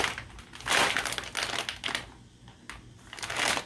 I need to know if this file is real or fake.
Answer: real